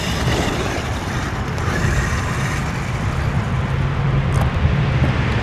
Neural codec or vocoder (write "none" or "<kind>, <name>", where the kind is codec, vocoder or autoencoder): vocoder, BigVGAN v2